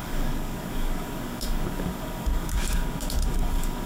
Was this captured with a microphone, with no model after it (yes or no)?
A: no